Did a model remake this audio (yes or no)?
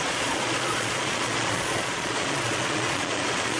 yes